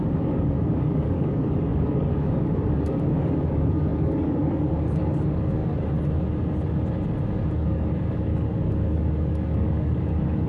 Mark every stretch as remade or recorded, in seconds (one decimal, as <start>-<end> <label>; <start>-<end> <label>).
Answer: 0.0-5.6 remade; 5.6-7.5 recorded; 7.5-10.5 remade